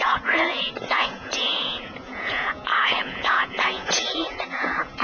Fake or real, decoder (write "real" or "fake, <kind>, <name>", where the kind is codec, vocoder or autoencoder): fake, vocoder, Vocos